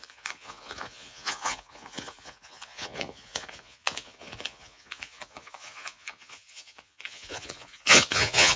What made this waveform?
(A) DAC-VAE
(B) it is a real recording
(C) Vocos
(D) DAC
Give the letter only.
C